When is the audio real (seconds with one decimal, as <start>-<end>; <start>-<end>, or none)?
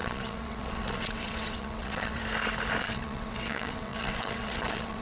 2.2-2.8